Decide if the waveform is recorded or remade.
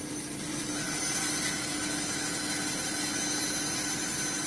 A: recorded